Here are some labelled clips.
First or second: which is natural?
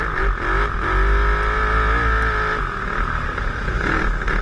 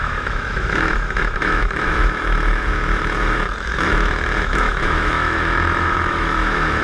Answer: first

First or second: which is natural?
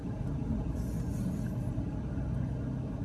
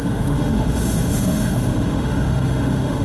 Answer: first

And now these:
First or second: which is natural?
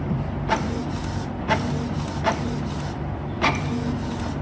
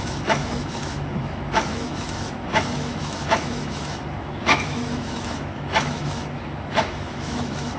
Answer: first